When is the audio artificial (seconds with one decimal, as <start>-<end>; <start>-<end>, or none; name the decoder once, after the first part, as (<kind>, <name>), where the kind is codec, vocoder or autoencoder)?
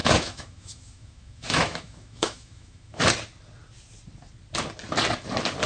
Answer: 0.0-3.0 (autoencoder, DAC-VAE)